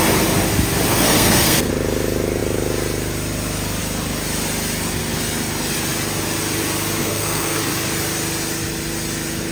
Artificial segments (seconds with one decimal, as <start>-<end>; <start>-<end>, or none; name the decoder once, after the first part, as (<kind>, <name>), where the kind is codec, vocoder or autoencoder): 0.9-1.7 (codec, SNAC); 7.0-7.6